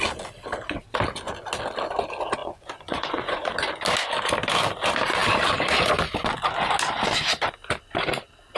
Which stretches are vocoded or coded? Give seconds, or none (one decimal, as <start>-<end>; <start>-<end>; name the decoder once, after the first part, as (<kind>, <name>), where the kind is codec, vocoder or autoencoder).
2.4-3.5 (vocoder, Vocos)

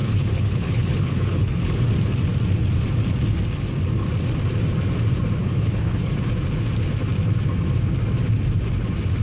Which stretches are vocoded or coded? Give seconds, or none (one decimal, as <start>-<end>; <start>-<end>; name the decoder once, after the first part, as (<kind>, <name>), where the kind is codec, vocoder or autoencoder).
0.0-1.8 (codec, HILCodec); 5.4-6.1

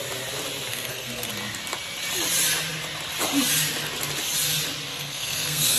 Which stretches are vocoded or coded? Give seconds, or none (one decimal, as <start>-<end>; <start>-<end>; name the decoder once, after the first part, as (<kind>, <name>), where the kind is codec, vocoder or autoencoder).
0.7-1.3 (codec, SNAC); 4.9-5.8

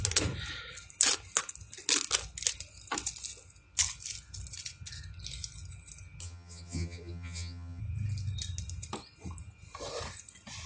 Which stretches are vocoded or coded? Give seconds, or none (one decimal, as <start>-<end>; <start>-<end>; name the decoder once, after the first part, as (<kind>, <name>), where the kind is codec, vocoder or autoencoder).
6.2-7.8 (vocoder, HiFi-GAN)

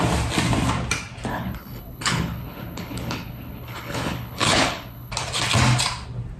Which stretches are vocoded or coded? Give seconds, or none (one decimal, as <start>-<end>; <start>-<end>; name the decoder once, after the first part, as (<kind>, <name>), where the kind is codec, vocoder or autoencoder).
1.3-5.1 (codec, HILCodec)